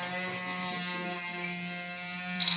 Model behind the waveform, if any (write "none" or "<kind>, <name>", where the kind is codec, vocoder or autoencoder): none